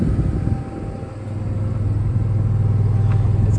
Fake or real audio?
real